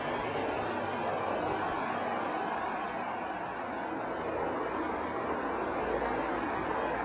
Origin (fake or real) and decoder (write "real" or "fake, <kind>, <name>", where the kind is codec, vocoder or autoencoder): real